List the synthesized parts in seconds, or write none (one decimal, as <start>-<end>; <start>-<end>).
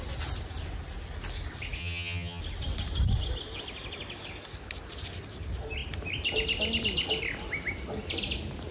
1.8-2.4